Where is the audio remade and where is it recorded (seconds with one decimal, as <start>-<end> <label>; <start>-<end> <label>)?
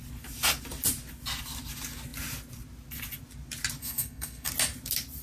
0.0-3.8 recorded; 3.8-4.5 remade; 4.5-5.2 recorded